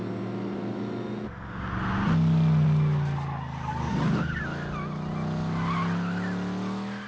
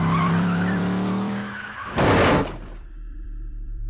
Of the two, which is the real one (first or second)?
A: first